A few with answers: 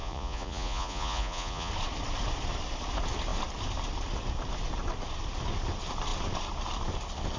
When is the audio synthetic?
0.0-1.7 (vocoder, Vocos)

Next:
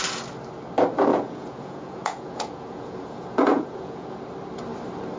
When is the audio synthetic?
1.1-4.2 (vocoder, Vocos)

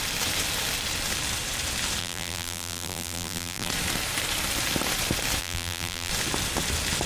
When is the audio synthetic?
2.0-3.7 (vocoder, BigVGAN v2); 5.4-6.1